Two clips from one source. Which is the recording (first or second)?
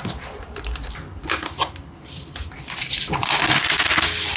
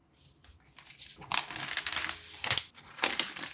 second